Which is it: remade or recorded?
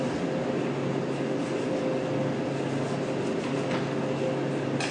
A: recorded